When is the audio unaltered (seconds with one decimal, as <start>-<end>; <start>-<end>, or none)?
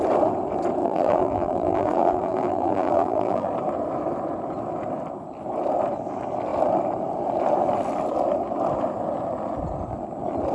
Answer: 0.0-0.8; 3.5-10.5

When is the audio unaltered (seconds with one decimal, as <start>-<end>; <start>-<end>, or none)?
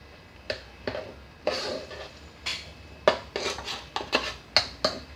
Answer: 0.0-5.2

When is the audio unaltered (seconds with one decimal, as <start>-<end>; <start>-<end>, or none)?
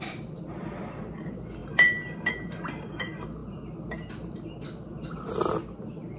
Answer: 0.0-6.2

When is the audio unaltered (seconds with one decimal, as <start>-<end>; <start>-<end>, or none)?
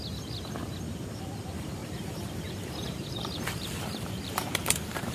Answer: 0.0-1.8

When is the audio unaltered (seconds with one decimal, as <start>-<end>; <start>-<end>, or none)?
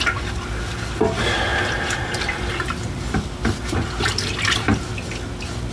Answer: 0.0-1.5; 4.9-5.7